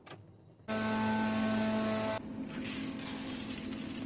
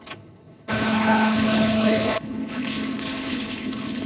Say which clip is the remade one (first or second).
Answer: second